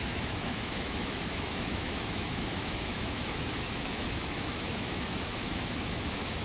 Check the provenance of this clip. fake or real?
fake